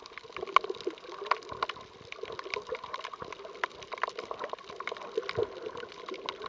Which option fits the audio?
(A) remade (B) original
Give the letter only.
B